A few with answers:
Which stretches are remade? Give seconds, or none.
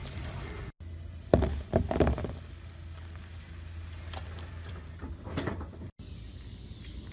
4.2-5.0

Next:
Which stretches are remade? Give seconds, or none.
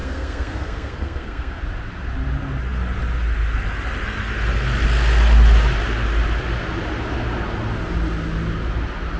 0.0-1.6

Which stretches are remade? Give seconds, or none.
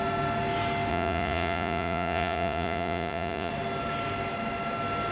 0.9-3.5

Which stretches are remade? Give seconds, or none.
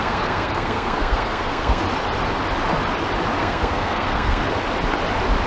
0.0-1.8; 3.4-4.5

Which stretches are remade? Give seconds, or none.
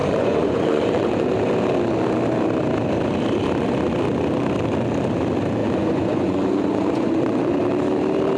0.0-1.3; 5.6-7.5